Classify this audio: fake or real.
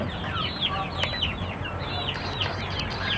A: real